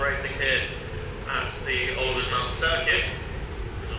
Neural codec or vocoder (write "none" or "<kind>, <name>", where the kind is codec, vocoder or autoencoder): none